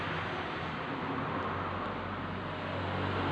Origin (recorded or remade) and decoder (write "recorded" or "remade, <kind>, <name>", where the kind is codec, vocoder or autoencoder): recorded